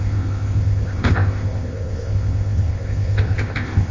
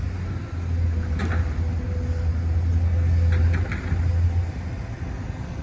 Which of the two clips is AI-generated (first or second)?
first